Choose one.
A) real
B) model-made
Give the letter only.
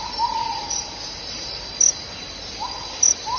A